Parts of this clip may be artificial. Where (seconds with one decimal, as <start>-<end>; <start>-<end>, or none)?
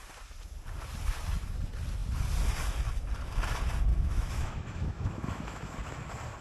3.9-5.7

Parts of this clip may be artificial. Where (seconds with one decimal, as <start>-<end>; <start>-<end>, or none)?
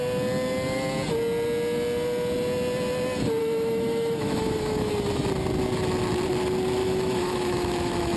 3.4-4.9; 6.8-8.2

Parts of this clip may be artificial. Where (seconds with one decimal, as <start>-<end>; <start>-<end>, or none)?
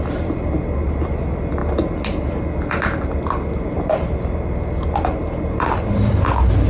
none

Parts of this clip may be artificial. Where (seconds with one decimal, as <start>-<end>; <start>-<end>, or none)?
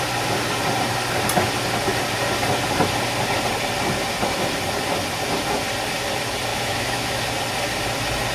6.5-7.2